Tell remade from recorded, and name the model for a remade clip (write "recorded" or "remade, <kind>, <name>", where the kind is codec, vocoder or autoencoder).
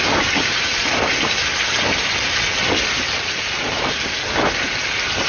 recorded